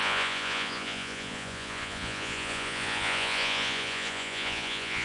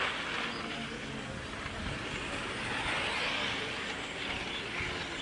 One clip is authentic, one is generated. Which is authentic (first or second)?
second